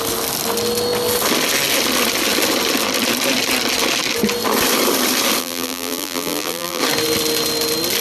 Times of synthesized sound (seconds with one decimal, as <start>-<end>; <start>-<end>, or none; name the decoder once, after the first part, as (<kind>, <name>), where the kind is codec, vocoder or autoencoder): 5.4-6.8 (vocoder, BigVGAN v2)